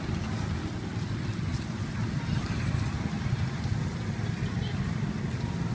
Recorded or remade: recorded